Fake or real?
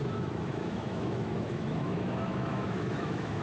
fake